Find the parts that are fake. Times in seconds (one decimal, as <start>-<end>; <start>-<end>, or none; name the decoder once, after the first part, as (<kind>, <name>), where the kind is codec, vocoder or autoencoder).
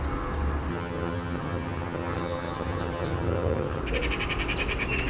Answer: 0.7-3.8 (vocoder, HiFi-GAN)